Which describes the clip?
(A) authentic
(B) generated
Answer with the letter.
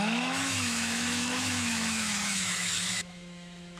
B